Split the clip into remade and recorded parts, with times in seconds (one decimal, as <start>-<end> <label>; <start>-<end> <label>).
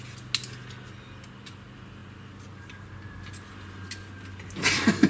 0.0-5.1 recorded